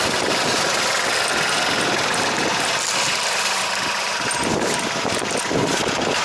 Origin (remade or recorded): recorded